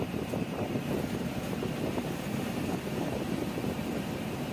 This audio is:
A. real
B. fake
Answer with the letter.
A